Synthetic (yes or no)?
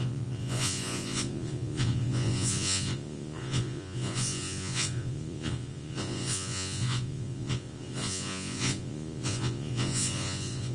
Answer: yes